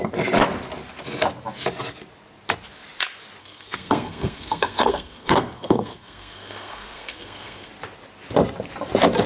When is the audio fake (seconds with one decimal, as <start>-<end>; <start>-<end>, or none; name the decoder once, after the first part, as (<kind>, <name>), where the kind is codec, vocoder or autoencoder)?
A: 3.4-7.7 (codec, SNAC)